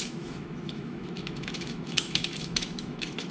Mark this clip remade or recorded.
remade